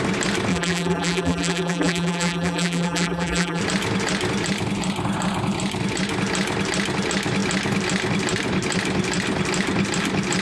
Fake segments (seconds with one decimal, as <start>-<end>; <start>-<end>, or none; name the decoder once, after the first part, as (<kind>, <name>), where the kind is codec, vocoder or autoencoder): 0.5-3.6 (vocoder, BigVGAN v2)